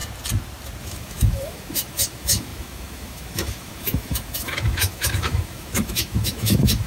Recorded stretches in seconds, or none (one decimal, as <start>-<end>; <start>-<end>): 0.0-0.8